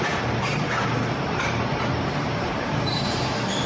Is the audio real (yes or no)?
no